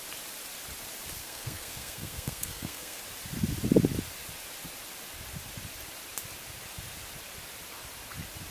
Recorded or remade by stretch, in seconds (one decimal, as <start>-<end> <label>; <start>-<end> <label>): 0.0-1.2 recorded; 1.2-3.0 remade; 3.0-8.5 recorded